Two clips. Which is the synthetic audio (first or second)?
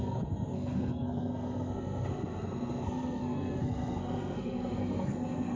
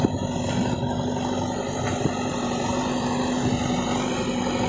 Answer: first